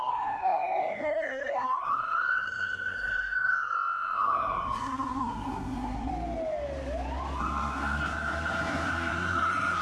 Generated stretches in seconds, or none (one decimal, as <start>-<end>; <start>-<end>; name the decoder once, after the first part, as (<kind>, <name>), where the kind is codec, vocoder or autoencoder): 0.0-6.1 (codec, SNAC); 7.4-9.8